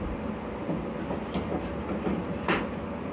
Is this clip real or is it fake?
real